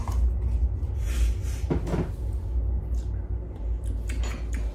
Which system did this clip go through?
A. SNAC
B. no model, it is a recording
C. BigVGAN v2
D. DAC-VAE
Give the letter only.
B